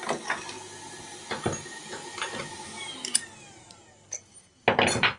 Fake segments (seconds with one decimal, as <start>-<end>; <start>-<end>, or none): none